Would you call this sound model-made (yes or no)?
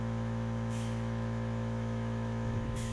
yes